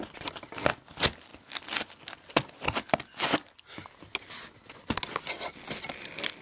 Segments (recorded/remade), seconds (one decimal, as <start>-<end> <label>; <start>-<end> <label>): 0.0-6.4 recorded